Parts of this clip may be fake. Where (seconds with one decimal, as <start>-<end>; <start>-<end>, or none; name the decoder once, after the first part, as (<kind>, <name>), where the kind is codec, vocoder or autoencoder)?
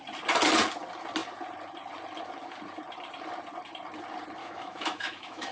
4.4-5.5 (autoencoder, DAC-VAE)